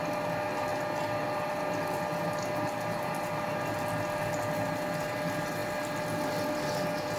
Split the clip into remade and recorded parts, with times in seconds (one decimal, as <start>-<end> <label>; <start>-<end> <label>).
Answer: 0.0-7.2 recorded